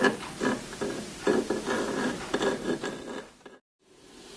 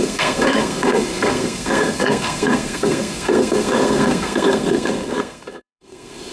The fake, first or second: second